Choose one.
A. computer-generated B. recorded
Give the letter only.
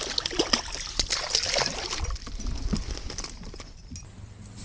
B